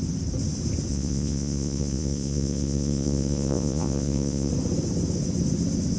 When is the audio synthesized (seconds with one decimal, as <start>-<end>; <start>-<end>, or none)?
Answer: 0.9-4.5